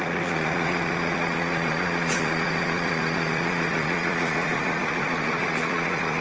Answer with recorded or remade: remade